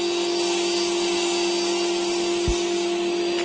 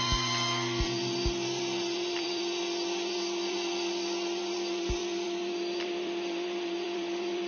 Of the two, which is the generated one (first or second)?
second